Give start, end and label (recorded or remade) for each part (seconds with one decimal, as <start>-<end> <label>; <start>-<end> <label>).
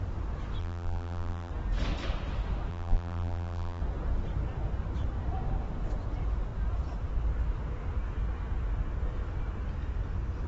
0.0-0.6 recorded; 0.6-1.5 remade; 1.5-2.7 recorded; 2.7-3.8 remade; 3.8-10.5 recorded